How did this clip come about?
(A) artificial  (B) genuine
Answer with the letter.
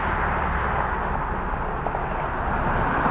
B